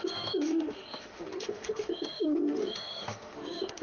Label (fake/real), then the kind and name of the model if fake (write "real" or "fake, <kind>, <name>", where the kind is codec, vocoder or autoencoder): fake, autoencoder, DAC-VAE